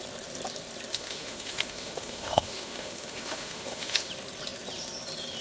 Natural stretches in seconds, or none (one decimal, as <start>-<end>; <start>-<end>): 0.0-0.9; 4.1-5.4